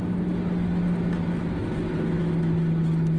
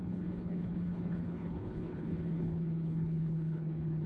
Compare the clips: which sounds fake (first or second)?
second